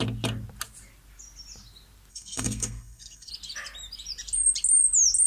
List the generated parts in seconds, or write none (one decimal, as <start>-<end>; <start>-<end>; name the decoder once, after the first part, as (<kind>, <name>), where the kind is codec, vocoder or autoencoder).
2.1-3.3 (codec, SNAC)